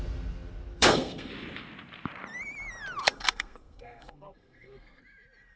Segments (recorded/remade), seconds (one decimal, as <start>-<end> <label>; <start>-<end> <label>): 0.0-0.7 recorded; 0.7-1.3 remade; 1.3-3.0 recorded; 3.0-5.0 remade; 5.0-5.6 recorded